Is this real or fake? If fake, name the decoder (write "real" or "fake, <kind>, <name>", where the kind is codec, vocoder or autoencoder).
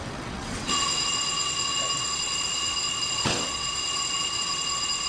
fake, vocoder, WaveNeXt